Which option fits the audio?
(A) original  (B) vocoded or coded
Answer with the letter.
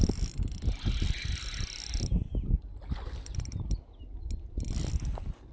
A